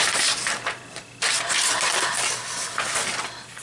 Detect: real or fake real